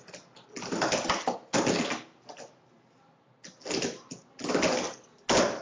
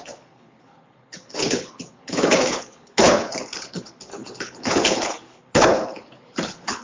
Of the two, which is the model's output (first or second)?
second